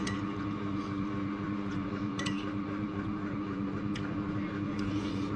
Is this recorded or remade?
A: remade